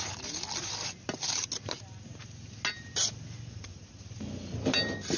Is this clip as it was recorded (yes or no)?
yes